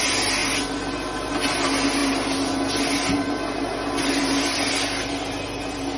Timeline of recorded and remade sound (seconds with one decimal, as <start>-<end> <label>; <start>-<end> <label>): 0.0-6.0 recorded